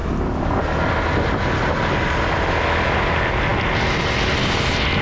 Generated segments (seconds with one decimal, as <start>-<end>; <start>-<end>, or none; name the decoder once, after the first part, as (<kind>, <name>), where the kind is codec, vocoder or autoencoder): none